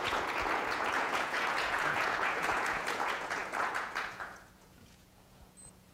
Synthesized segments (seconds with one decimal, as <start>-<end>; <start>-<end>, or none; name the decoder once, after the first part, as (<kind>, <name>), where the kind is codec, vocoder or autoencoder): 0.0-5.9 (vocoder, Vocos)